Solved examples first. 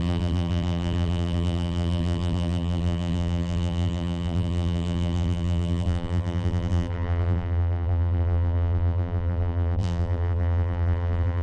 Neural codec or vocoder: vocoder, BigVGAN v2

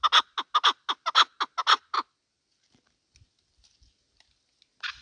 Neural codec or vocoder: none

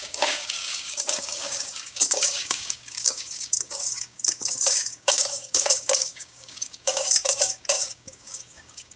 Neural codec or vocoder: codec, DAC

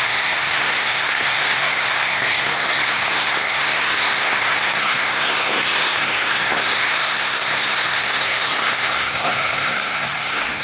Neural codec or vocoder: codec, SNAC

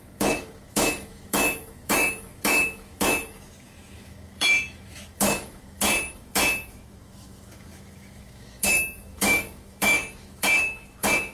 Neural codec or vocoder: autoencoder, DAC-VAE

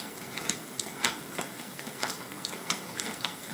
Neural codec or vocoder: codec, SNAC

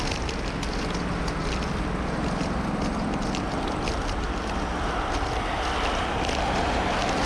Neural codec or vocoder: none